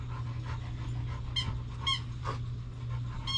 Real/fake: real